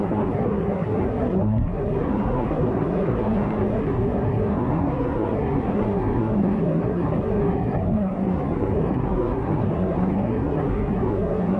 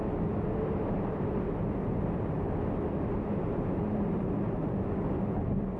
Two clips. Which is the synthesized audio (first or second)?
first